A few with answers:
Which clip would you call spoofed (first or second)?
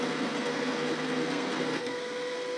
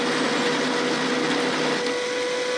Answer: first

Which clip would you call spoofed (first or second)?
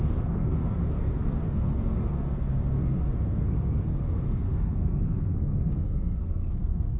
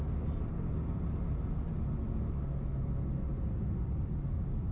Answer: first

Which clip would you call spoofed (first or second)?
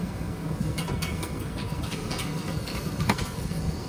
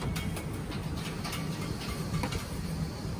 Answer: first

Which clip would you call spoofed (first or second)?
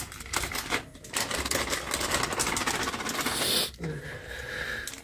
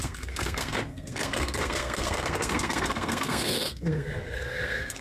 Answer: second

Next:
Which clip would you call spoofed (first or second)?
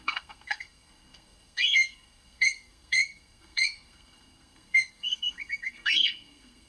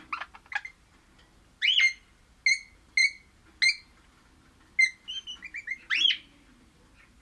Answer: first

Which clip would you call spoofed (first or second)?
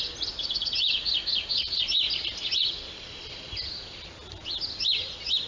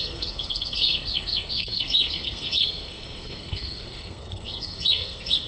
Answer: second